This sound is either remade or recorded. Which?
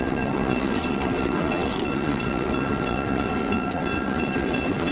remade